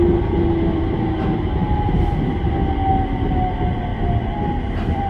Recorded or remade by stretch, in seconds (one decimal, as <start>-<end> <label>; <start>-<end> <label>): 0.0-3.9 recorded; 3.9-5.1 remade